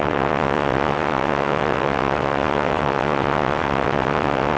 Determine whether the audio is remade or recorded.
remade